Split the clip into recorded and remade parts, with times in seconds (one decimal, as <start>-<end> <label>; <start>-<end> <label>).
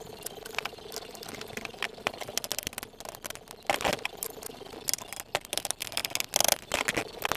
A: 0.0-7.4 recorded